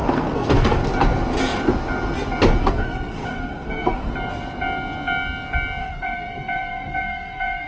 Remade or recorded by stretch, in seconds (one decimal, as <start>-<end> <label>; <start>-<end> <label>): 0.0-0.8 remade; 0.8-2.6 recorded; 2.6-4.1 remade; 4.1-5.8 recorded; 5.8-7.7 remade